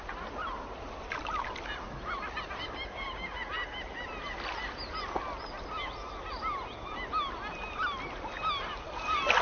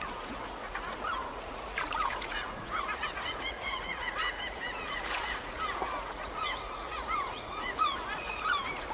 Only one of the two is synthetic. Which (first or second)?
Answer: second